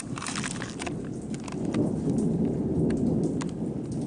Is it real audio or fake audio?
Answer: real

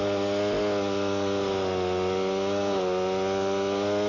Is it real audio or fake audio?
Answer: real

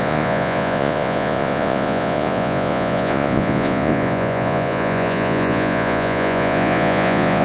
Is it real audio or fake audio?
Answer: fake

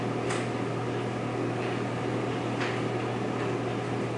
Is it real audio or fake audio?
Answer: real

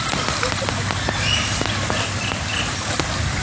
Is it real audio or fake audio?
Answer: real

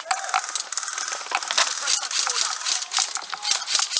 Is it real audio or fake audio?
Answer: real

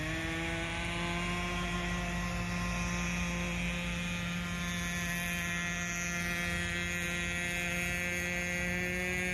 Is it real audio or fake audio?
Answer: real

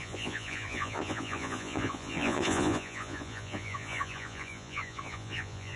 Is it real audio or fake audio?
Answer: fake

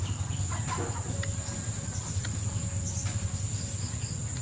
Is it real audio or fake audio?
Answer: real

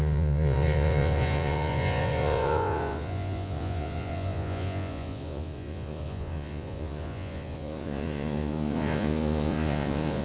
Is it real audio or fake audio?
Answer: fake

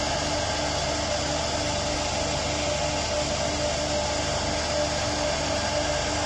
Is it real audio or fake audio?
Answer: real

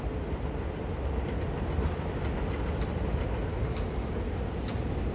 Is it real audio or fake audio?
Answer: real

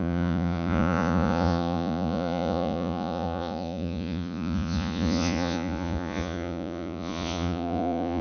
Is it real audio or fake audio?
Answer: fake